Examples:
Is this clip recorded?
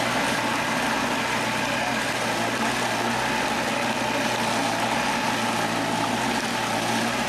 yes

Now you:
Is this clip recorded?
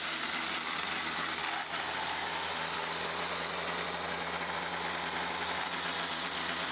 yes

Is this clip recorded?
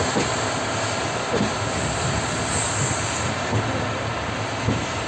yes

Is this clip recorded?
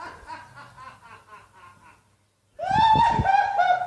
yes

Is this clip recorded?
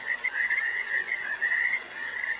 no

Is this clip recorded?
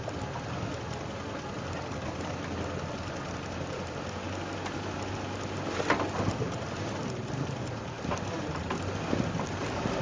yes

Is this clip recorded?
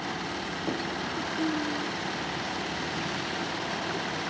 yes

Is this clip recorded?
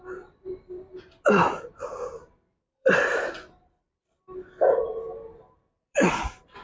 no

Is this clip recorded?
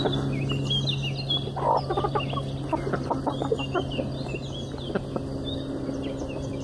yes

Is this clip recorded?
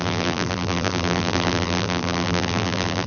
no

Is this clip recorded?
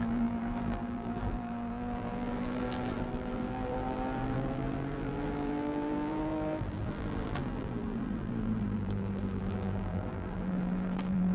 no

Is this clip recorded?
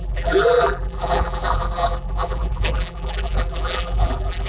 no